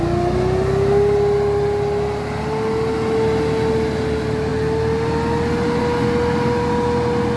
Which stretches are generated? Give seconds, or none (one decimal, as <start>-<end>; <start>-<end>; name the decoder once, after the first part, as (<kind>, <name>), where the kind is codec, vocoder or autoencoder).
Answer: none